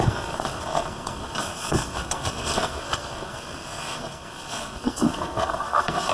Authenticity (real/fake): fake